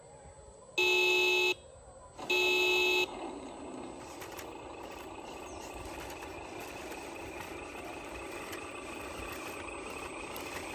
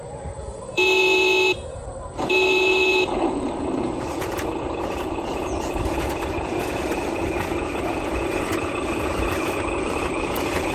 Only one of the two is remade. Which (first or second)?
second